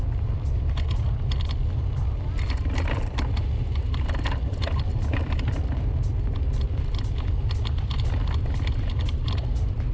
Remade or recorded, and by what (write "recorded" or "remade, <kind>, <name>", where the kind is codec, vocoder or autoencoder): recorded